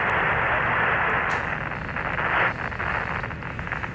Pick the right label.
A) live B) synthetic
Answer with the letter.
A